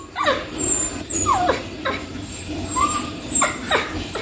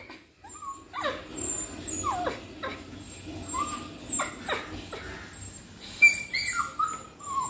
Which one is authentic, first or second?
second